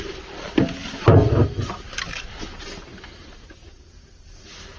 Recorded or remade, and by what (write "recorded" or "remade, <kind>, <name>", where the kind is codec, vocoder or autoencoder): recorded